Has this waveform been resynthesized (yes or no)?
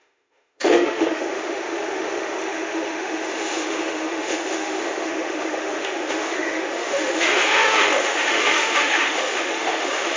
yes